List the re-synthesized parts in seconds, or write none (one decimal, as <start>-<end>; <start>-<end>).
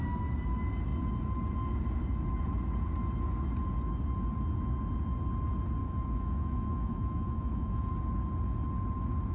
5.8-7.9